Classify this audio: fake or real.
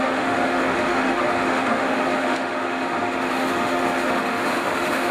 fake